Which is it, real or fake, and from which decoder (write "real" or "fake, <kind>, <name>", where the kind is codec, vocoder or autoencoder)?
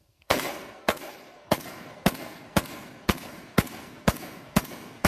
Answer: fake, codec, SNAC